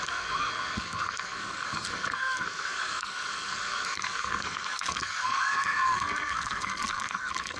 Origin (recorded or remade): remade